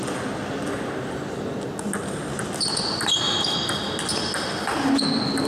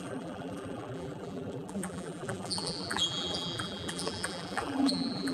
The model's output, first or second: second